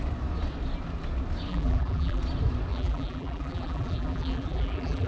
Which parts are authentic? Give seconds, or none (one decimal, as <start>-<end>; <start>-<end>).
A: 0.0-1.5; 2.2-2.7